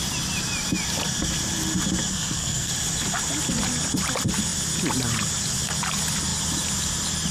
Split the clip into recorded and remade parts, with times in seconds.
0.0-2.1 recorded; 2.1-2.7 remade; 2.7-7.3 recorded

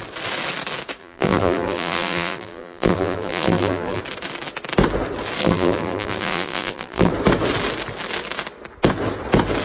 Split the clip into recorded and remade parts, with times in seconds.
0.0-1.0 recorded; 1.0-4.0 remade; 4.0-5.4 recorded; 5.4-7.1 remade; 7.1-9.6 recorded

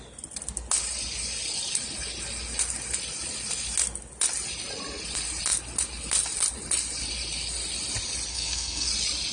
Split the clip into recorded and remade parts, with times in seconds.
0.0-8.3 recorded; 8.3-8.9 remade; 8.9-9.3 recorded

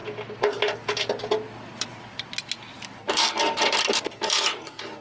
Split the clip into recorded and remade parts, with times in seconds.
0.0-1.7 recorded; 1.7-2.3 remade; 2.3-2.7 recorded; 2.7-5.0 remade

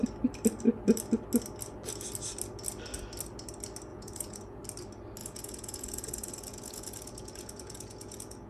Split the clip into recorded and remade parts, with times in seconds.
0.0-3.9 recorded; 3.9-4.6 remade; 4.6-5.2 recorded; 5.2-8.5 remade

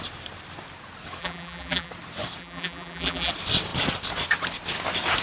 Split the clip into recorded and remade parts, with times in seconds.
0.0-1.2 recorded; 1.2-1.9 remade; 1.9-2.4 recorded; 2.4-3.3 remade; 3.3-5.2 recorded

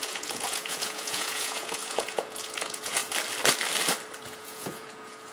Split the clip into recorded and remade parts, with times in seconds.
0.0-3.0 remade; 3.0-4.2 recorded; 4.2-5.3 remade

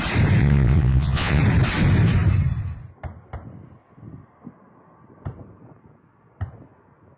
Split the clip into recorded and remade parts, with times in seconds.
0.0-0.4 recorded; 0.4-1.4 remade; 1.4-7.2 recorded